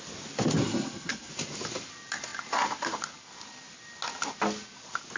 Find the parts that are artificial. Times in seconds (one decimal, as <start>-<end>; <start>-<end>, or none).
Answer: 0.6-1.3